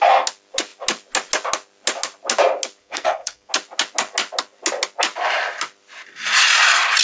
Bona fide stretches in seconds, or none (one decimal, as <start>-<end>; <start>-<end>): 0.0-2.8; 3.5-7.0